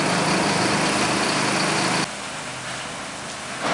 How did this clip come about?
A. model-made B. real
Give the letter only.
B